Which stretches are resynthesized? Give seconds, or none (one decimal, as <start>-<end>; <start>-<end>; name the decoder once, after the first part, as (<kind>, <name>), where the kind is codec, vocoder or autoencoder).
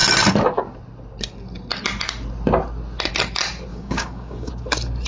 3.7-4.5 (codec, DAC)